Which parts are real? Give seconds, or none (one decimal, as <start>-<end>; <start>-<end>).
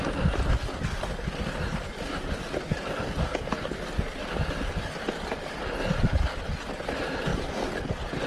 0.0-8.3